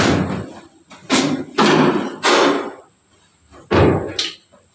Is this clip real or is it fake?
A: real